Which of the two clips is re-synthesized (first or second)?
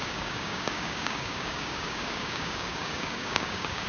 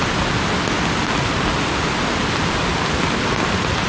first